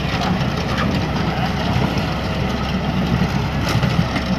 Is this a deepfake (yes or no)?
no